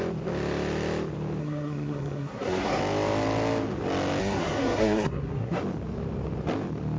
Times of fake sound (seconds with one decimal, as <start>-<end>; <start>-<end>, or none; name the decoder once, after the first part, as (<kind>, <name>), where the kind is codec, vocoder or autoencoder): 1.4-2.8 (codec, SNAC); 4.2-5.6

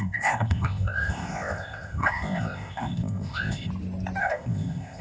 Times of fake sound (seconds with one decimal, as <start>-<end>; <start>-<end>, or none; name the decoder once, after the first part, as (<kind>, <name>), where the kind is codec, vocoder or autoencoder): 0.0-3.7 (codec, ZipCodec); 4.2-5.0

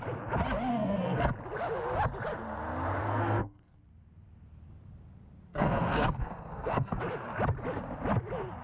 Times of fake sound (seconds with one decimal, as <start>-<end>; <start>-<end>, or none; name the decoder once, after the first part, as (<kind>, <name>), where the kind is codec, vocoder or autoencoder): 0.7-1.3 (codec, SNAC); 3.0-3.8; 5.5-7.0

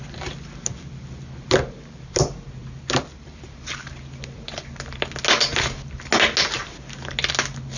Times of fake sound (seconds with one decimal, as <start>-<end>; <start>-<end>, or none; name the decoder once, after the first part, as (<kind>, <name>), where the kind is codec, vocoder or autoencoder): none

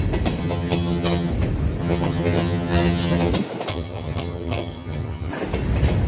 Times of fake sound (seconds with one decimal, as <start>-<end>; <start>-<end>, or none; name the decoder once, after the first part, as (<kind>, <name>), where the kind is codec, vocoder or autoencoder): 0.4-1.3 (vocoder, HiFi-GAN); 1.8-3.3; 3.7-5.3